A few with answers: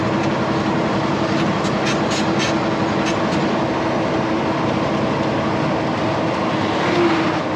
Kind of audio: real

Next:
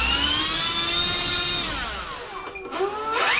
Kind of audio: real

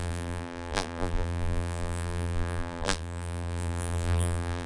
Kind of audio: fake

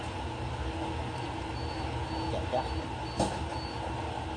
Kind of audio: real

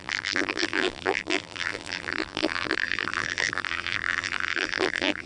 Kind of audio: fake